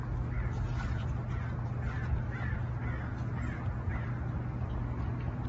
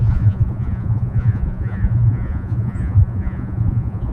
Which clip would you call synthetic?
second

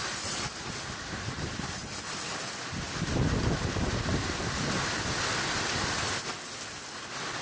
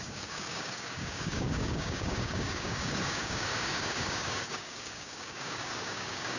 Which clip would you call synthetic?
second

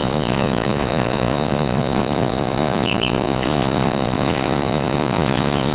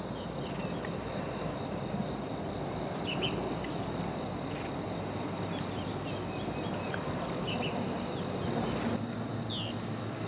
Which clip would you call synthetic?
first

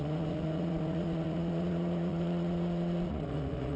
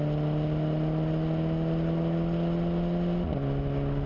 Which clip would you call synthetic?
first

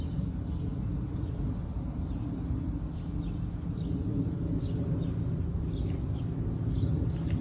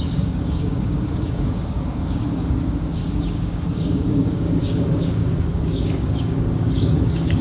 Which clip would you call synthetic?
second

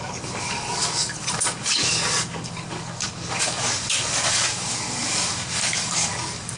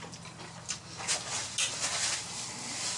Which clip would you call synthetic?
first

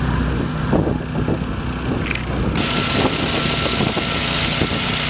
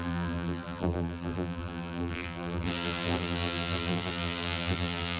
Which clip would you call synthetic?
second